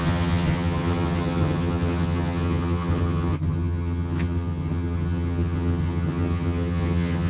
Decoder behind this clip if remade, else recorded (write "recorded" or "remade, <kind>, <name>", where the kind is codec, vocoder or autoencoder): remade, vocoder, HiFi-GAN